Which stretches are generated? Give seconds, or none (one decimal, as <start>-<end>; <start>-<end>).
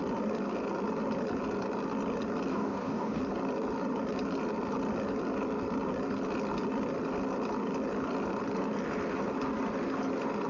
2.5-3.2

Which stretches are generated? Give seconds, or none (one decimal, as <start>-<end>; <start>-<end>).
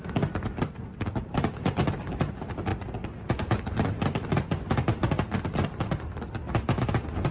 none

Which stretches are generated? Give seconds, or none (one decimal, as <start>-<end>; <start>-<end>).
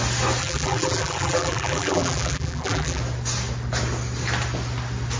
0.4-3.0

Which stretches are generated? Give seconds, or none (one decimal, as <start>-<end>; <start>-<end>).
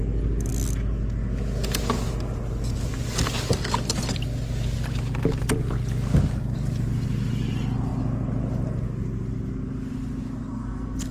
10.5-11.1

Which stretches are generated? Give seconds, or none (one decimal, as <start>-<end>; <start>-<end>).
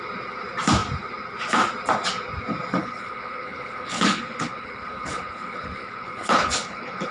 2.8-7.1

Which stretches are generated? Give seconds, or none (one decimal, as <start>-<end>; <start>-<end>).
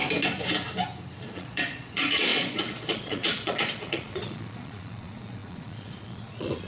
1.2-6.7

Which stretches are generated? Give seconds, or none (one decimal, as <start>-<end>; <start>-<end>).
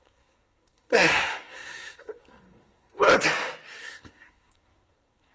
0.0-3.1; 3.8-5.3